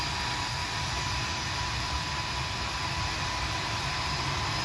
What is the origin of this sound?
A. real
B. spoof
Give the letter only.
B